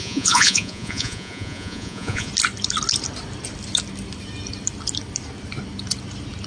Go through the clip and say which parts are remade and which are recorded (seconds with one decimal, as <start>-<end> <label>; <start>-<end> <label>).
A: 0.0-2.3 remade; 2.3-6.5 recorded